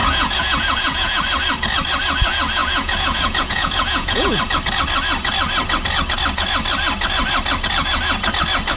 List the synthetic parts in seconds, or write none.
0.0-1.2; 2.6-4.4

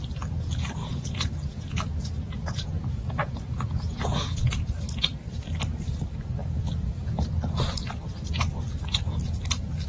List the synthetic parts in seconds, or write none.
0.8-4.9; 6.4-7.3

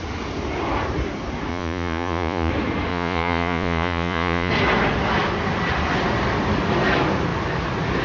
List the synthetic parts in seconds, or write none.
1.5-2.5; 2.9-4.5

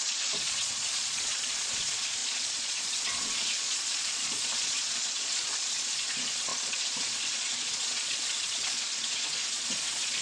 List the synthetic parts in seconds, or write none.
0.0-10.2

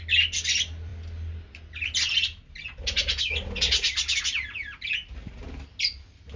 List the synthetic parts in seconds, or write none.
none

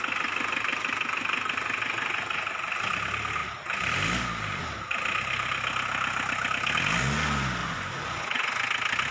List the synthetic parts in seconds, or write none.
7.6-8.5